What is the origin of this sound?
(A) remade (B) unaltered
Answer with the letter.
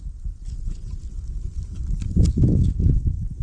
B